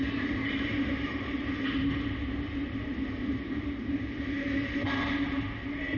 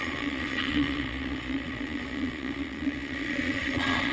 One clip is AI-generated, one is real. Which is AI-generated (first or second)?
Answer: second